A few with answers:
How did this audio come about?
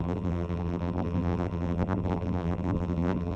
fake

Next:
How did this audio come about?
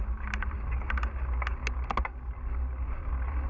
real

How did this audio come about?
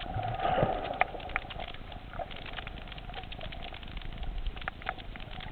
real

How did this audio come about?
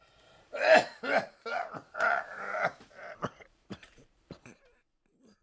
fake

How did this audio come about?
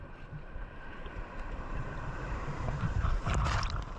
fake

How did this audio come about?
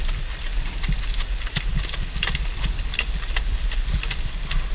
real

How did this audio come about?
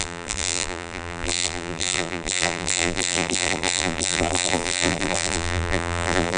fake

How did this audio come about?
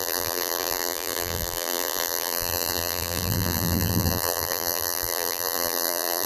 fake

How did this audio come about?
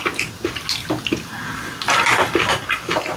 real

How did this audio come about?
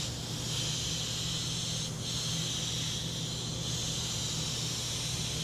real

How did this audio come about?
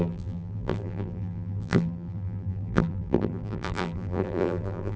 fake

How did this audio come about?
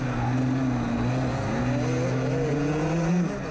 real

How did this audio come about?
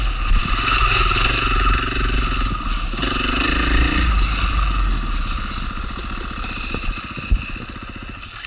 real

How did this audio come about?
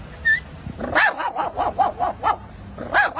real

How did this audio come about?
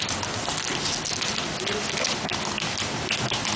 fake